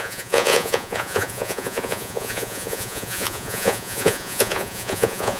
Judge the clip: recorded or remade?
remade